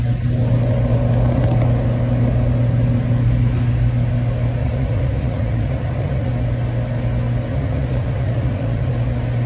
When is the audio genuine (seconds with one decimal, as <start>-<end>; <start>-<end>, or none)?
0.0-4.6; 6.3-7.5; 8.9-9.5